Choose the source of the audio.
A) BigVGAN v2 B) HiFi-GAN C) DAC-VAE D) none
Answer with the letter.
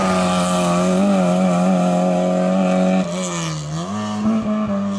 D